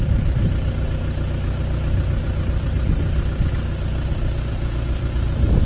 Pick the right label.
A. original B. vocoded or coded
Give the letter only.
A